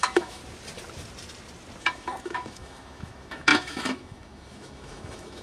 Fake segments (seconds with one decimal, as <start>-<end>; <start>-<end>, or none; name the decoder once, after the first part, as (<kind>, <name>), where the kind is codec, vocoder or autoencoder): 0.0-0.4 (autoencoder, DAC-VAE); 1.8-5.4